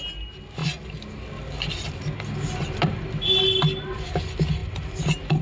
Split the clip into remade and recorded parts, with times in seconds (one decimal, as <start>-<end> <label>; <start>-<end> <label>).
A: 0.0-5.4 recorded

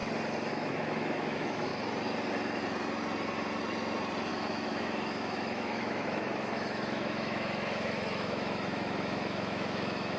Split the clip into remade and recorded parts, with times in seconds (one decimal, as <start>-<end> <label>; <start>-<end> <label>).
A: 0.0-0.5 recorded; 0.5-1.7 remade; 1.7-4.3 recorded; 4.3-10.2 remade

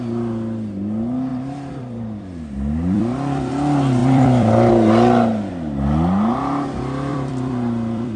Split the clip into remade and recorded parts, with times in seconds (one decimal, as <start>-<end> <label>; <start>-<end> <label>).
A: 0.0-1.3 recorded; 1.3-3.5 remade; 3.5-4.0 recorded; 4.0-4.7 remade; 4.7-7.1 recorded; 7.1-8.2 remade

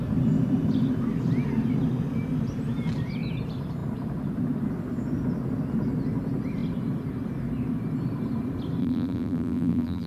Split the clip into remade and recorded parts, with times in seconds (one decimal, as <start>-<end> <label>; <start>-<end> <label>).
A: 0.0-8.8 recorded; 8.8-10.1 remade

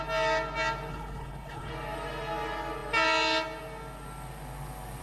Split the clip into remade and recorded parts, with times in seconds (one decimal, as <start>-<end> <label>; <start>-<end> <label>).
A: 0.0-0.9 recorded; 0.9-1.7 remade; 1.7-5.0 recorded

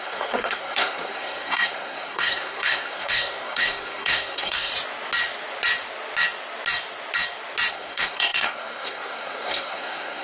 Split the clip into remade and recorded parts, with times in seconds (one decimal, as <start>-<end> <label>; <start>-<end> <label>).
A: 0.0-4.7 remade; 4.7-7.7 recorded; 7.7-10.2 remade

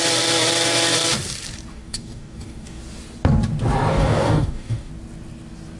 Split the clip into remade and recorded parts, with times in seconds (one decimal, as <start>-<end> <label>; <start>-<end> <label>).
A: 0.0-1.7 recorded; 1.7-2.8 remade; 2.8-3.9 recorded; 3.9-4.9 remade; 4.9-5.8 recorded